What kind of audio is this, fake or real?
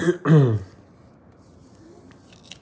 real